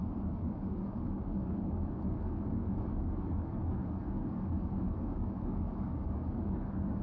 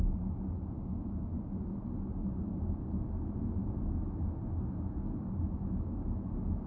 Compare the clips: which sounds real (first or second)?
second